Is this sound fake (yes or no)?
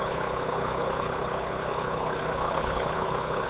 yes